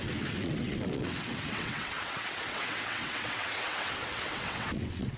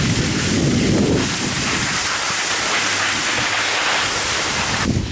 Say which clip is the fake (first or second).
first